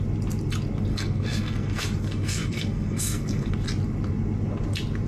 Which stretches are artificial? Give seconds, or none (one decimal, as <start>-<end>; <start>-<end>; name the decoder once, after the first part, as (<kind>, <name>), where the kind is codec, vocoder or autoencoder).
0.9-3.5 (codec, SNAC)